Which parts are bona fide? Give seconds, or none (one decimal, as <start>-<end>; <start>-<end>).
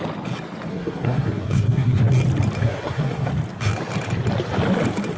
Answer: 0.0-0.7; 2.0-2.6; 3.3-5.2